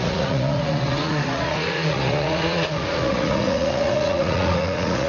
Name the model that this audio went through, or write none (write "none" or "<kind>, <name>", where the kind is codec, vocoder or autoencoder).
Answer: vocoder, Vocos